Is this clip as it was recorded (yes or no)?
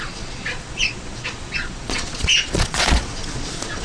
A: no